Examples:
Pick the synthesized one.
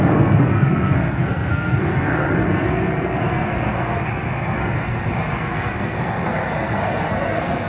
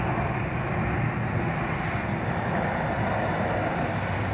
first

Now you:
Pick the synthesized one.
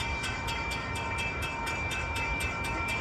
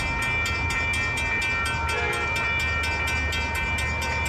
first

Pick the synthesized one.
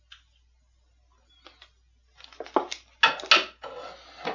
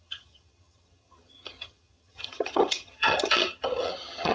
second